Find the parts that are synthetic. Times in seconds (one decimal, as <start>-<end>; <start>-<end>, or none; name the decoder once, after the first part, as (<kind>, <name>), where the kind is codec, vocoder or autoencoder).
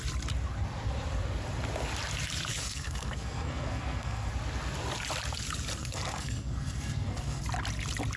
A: 2.5-4.3 (codec, SNAC); 5.8-7.4